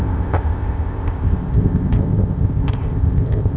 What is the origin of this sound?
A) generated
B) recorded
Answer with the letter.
A